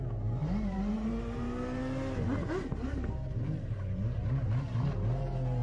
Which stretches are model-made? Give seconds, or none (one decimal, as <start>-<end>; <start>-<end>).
0.4-1.1; 2.7-3.8